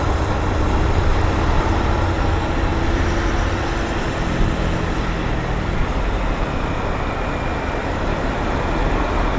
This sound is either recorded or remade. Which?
recorded